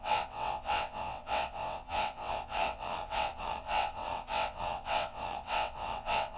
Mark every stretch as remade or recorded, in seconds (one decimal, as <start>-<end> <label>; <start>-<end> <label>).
0.0-6.4 remade